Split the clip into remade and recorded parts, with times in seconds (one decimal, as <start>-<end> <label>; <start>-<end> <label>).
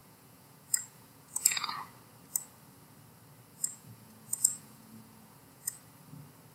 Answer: 0.0-1.9 remade; 1.9-3.5 recorded; 3.5-5.8 remade; 5.8-6.5 recorded